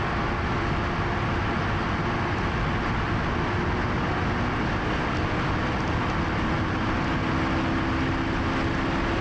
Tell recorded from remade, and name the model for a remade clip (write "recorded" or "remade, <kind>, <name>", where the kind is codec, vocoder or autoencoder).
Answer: recorded